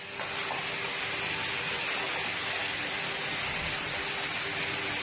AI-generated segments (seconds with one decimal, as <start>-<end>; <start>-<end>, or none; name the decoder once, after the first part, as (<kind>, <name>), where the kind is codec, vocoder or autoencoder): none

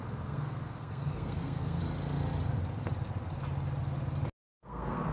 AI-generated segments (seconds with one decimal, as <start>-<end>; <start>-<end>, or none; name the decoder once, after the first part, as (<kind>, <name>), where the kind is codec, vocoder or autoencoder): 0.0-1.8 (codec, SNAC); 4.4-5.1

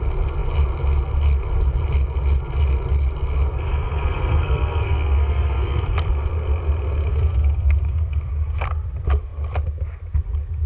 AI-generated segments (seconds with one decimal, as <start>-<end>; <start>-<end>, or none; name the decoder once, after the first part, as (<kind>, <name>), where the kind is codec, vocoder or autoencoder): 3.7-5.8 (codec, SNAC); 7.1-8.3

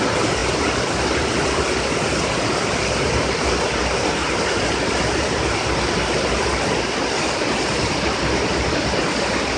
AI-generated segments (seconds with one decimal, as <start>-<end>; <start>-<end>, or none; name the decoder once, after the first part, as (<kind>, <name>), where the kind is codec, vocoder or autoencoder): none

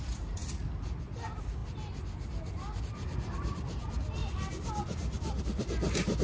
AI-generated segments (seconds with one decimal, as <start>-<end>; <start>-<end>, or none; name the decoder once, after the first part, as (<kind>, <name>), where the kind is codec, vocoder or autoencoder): 0.0-1.6 (vocoder, BigVGAN v2); 2.8-6.2

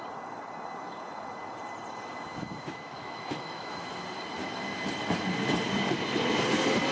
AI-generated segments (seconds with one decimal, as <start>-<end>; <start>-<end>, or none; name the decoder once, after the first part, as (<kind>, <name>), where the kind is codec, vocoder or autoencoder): 2.3-4.0 (autoencoder, DAC-VAE)

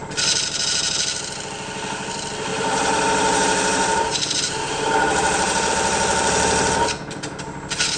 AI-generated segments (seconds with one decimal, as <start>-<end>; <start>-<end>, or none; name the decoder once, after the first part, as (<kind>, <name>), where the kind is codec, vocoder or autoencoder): 2.5-5.7 (vocoder, BigVGAN v2)